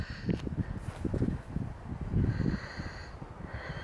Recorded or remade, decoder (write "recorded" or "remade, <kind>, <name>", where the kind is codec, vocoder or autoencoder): recorded